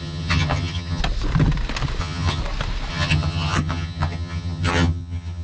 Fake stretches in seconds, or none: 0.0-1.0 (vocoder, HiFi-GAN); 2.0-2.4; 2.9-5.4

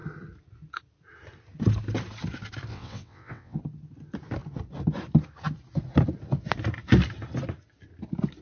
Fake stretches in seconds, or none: 2.7-3.6 (vocoder, WaveNeXt)

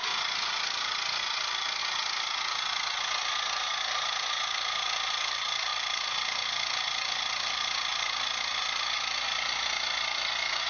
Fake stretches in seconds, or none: none

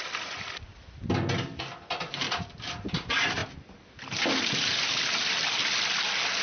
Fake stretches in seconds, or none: none

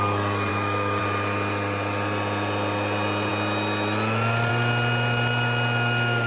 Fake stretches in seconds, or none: 0.5-1.0 (codec, DAC)

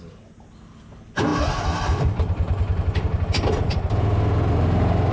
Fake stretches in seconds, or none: none